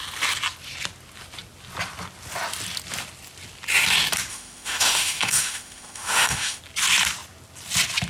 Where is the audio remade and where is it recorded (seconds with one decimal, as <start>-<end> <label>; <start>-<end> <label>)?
0.0-4.3 recorded; 4.3-6.6 remade; 6.6-8.1 recorded